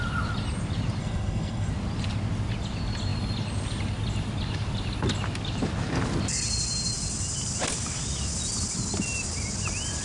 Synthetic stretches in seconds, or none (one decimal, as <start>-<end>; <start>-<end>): 1.0-1.7